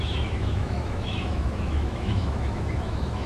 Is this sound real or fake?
fake